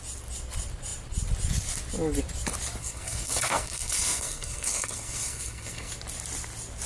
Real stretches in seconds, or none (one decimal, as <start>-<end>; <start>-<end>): 0.0-2.8; 5.9-6.9